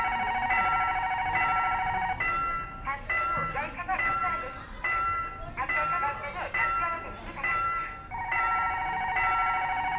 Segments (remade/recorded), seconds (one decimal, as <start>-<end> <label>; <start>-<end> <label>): 0.0-10.0 recorded